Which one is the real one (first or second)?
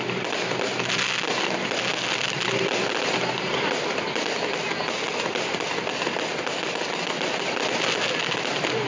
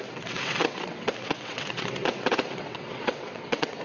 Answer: first